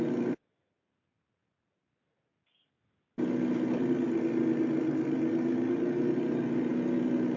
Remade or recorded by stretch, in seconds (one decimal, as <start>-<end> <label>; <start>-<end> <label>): 0.0-7.4 recorded